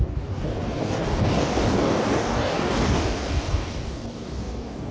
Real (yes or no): no